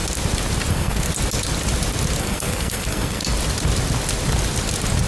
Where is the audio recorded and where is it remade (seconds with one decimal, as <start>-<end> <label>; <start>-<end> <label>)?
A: 0.0-0.7 recorded; 0.7-1.1 remade; 1.1-2.2 recorded; 2.2-3.2 remade; 3.2-5.1 recorded